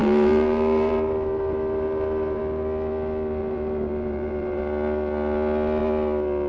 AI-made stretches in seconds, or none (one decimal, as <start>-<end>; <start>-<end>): 0.0-2.4; 3.4-4.6